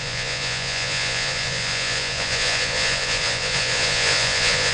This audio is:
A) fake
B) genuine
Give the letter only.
A